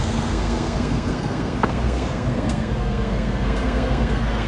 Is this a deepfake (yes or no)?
yes